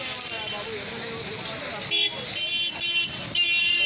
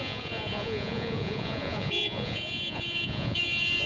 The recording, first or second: first